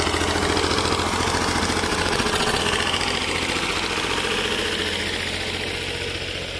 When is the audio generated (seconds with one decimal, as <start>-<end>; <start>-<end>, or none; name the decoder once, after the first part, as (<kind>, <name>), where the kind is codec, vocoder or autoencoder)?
1.9-2.6 (vocoder, WaveNeXt)